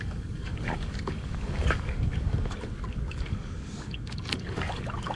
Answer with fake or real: fake